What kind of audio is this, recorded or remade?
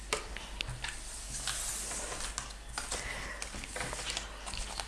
recorded